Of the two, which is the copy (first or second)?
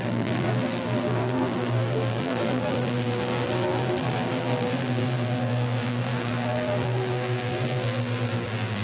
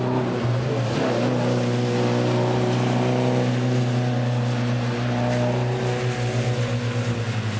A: first